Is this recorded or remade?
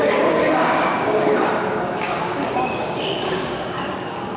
remade